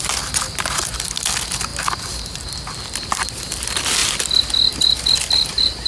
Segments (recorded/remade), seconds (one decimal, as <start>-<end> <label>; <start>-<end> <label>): 0.0-5.9 recorded